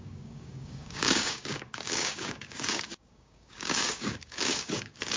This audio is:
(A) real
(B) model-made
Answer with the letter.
B